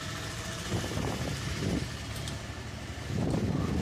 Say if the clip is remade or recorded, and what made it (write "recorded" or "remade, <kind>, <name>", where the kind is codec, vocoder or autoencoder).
remade, vocoder, BigVGAN v2